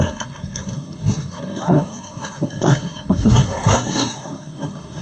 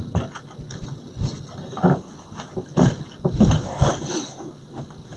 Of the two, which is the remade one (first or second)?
first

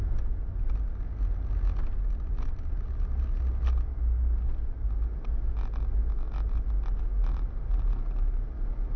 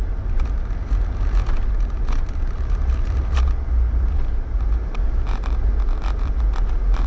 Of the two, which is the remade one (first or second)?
second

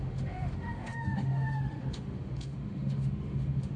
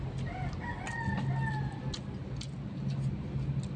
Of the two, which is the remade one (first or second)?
first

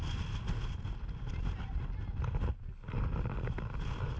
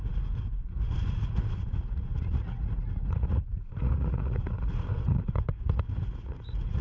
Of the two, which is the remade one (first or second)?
second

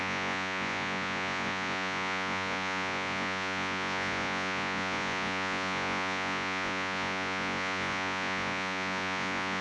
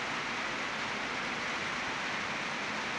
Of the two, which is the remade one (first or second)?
first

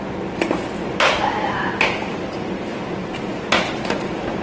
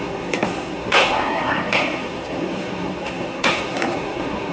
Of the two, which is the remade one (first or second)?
second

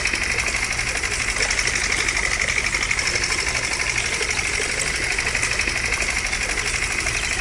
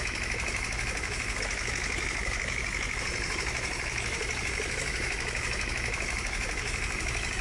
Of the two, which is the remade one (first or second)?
second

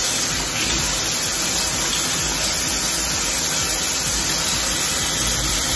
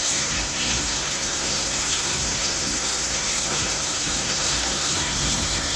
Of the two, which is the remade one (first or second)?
second